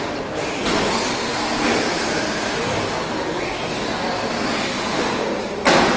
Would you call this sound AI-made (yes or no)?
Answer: no